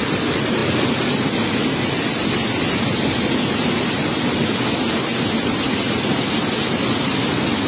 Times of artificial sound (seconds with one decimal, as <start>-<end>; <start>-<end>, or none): none